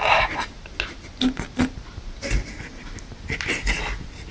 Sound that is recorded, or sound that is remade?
recorded